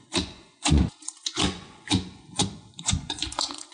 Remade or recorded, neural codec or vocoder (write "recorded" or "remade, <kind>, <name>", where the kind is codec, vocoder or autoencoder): remade, vocoder, Vocos